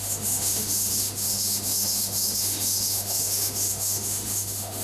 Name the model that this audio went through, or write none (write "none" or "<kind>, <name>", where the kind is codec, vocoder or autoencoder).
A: autoencoder, DAC-VAE